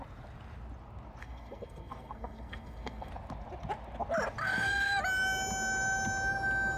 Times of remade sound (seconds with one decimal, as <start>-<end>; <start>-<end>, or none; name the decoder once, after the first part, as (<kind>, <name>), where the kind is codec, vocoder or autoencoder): 1.2-3.1 (codec, SNAC); 4.4-5.0